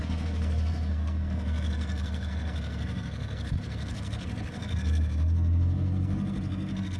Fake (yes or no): yes